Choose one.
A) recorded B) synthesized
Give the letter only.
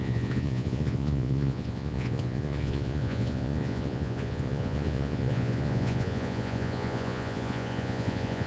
B